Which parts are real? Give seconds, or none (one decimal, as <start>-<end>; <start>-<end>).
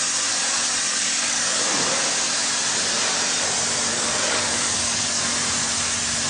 0.0-0.9; 1.6-3.9; 5.2-6.3